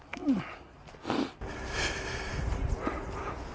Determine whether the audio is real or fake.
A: real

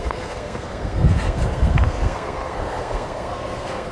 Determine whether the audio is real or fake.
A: fake